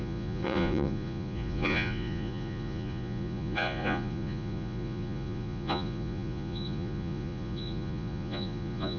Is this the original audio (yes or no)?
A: no